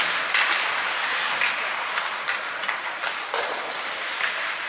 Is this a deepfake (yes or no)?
no